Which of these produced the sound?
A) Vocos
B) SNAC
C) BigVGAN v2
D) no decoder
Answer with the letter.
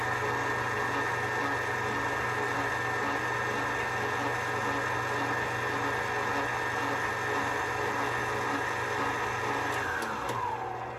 D